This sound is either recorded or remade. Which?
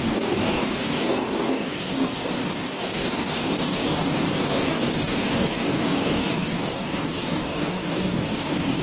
remade